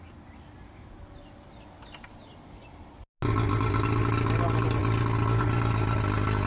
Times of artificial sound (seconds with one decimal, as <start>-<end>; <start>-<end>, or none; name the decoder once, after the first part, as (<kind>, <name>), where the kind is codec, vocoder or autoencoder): none